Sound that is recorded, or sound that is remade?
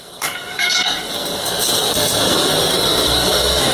remade